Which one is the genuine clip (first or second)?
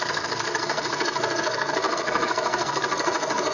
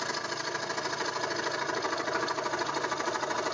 second